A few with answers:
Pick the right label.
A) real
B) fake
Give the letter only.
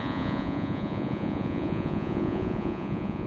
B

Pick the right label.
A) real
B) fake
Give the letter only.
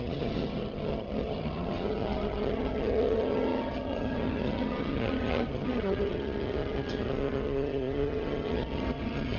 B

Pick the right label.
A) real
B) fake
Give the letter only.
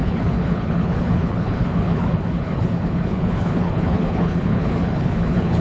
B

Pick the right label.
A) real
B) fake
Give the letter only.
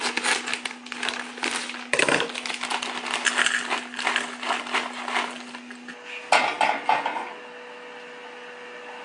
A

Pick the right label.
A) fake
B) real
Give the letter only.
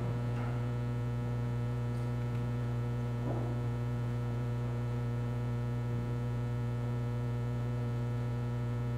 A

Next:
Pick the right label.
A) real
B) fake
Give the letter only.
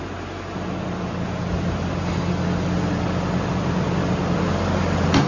A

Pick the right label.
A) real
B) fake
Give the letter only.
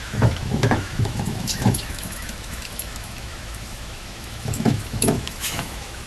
B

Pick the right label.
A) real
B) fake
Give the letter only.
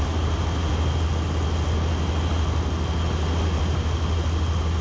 A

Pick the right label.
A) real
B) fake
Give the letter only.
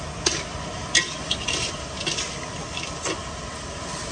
A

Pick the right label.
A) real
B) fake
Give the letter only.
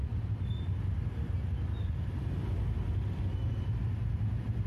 A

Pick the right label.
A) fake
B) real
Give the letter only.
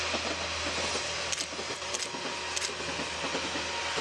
B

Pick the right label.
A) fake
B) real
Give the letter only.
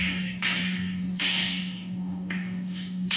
A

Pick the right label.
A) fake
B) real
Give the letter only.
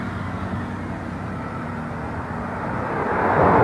B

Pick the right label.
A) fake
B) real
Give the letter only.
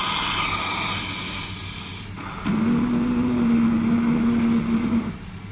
B